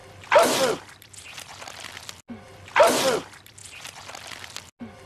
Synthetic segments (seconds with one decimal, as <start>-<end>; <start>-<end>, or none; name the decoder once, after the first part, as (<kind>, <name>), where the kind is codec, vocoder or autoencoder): none